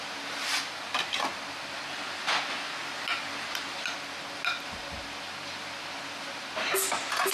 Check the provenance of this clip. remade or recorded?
recorded